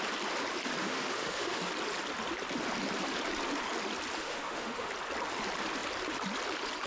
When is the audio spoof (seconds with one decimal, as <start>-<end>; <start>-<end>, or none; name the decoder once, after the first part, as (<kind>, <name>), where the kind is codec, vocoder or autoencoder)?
0.8-1.6 (autoencoder, DAC-VAE); 4.2-4.9